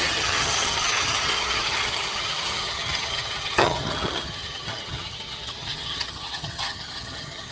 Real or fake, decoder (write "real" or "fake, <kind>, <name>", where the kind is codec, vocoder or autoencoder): fake, vocoder, HiFi-GAN